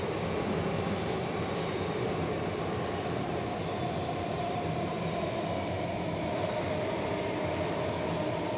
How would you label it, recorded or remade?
recorded